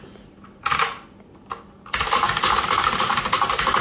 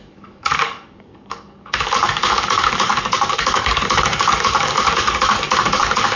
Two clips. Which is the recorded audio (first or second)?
first